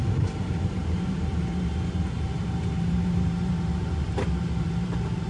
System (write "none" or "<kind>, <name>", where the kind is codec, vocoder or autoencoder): vocoder, BigVGAN v2